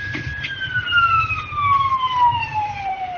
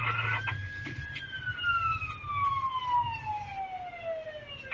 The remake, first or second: first